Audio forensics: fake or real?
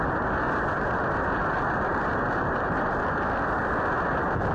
real